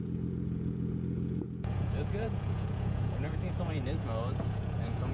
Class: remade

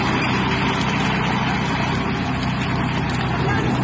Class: recorded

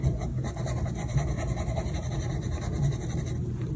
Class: recorded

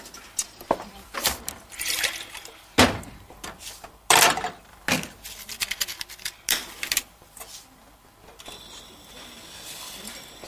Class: recorded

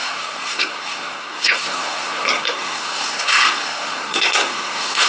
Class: remade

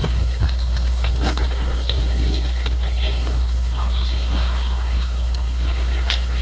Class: remade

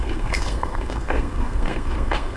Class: remade